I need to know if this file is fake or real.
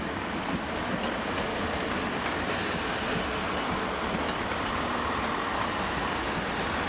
real